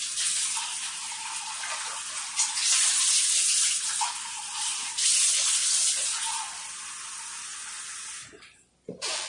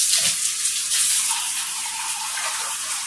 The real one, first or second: first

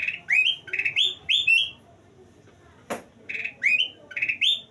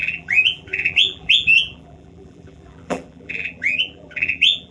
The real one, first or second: first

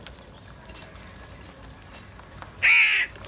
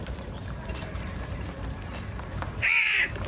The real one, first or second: first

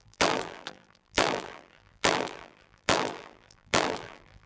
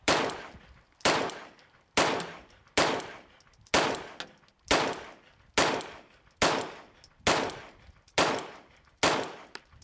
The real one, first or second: second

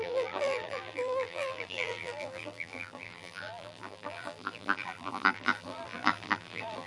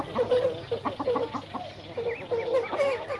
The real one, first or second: second